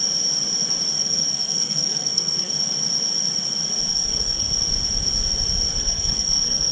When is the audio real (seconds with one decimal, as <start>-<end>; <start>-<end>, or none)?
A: 0.0-1.0; 2.5-3.9; 4.5-5.7